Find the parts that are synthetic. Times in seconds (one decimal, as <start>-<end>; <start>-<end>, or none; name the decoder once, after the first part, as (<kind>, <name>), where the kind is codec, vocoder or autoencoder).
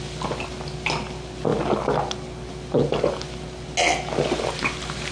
none